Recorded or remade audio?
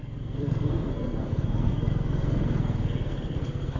remade